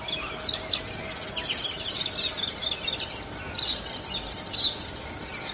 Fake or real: real